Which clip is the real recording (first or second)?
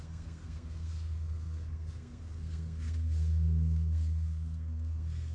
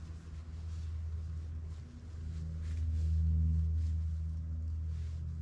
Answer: second